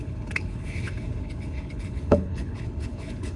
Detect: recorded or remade remade